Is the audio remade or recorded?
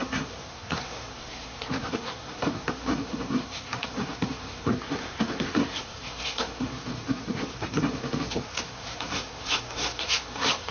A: remade